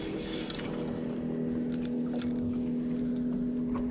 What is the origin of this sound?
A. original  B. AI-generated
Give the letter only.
A